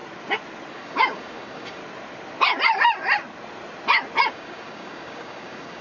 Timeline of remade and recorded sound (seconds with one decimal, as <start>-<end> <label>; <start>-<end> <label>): 0.0-0.7 recorded; 0.7-1.8 remade; 1.8-4.3 recorded; 4.3-5.8 remade